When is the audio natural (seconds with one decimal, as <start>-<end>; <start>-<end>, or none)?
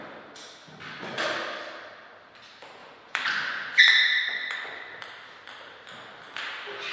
0.0-2.8; 3.8-4.2; 4.9-6.9